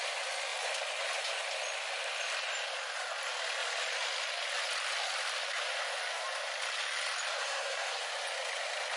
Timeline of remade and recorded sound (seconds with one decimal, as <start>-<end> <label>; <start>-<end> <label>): 0.0-7.4 recorded; 7.4-8.0 remade; 8.0-9.0 recorded